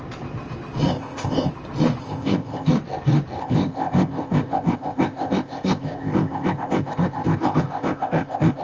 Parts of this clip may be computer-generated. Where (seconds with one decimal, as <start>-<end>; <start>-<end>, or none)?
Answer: 0.9-1.5; 2.0-2.7; 3.4-8.6